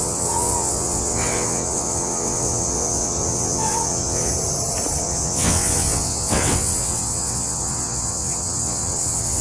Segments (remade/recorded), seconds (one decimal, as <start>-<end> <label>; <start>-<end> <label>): 0.0-4.3 remade; 4.3-5.0 recorded; 5.0-9.4 remade